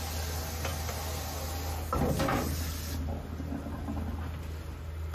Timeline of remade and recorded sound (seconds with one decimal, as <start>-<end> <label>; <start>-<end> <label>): 0.0-5.1 recorded